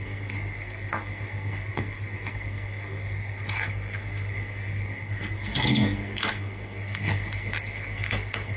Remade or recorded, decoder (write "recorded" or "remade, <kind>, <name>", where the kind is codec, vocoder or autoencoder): remade, codec, SNAC